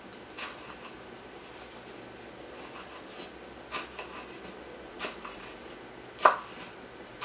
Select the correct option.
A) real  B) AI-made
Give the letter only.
A